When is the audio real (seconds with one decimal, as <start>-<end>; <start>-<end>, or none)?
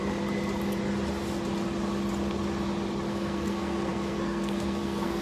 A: 0.0-3.1